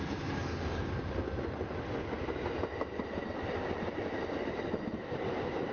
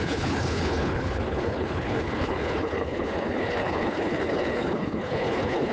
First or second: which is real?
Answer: first